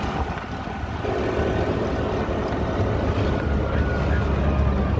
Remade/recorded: recorded